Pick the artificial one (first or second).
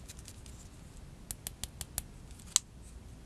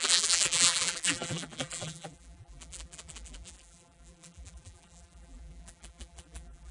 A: second